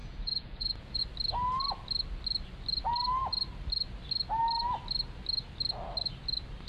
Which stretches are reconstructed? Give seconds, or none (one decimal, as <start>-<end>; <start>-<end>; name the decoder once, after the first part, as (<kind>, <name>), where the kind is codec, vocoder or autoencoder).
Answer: 0.0-1.0 (vocoder, Vocos)